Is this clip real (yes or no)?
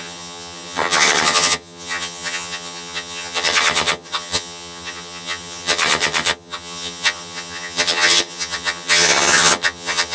no